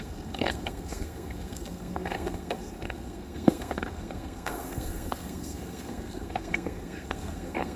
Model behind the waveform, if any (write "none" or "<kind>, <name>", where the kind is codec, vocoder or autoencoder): codec, SNAC